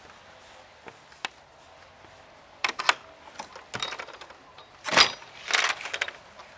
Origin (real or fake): real